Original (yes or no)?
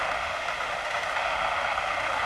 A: no